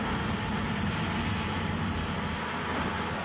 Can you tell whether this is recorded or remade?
recorded